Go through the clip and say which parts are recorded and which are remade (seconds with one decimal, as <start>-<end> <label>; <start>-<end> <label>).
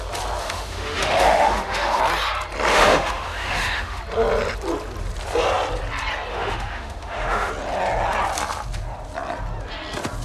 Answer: 0.0-0.4 recorded; 0.4-2.0 remade; 2.0-2.7 recorded; 2.7-4.0 remade; 4.0-6.3 recorded; 6.3-7.5 remade; 7.5-10.2 recorded